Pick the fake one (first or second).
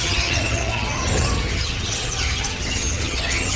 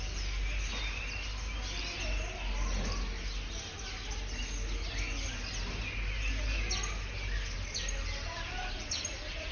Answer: first